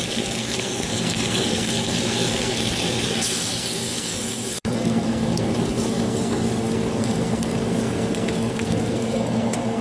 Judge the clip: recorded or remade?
remade